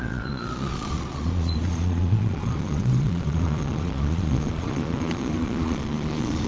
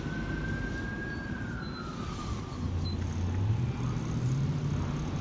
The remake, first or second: first